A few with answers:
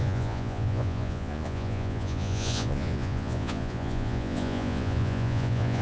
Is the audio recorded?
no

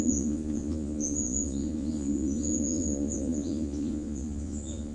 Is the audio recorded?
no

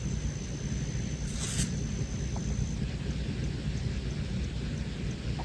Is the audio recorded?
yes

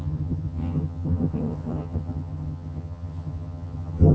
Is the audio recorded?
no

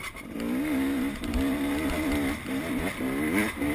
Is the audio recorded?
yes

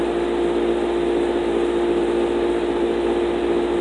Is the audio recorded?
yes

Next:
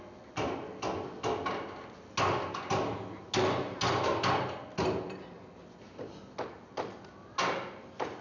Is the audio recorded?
yes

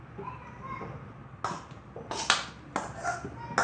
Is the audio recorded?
yes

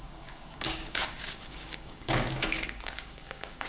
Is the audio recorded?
no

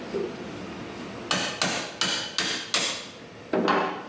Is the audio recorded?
yes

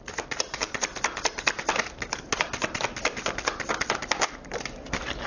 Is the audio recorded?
yes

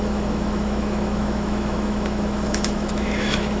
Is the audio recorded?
no